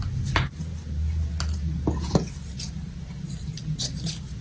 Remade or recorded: recorded